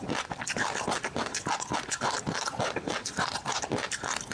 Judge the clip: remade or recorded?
recorded